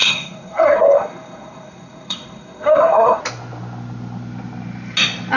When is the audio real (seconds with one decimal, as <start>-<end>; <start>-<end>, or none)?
3.2-5.4